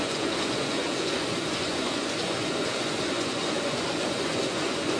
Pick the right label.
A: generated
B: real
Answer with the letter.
A